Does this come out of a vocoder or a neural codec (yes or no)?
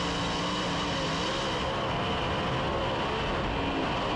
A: no